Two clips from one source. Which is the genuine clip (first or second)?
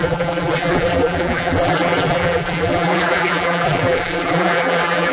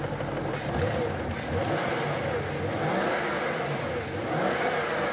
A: second